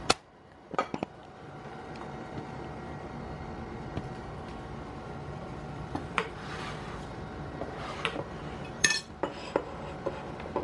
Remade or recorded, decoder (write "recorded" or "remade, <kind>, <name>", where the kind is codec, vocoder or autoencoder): remade, vocoder, BigVGAN v2